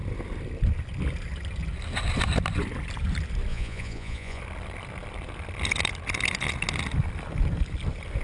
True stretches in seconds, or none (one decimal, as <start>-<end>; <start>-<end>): 0.0-3.5; 4.4-8.2